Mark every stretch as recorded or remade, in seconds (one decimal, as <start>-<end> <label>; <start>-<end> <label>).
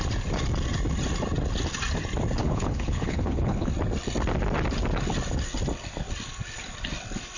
0.0-2.4 recorded; 2.4-3.7 remade; 3.7-7.4 recorded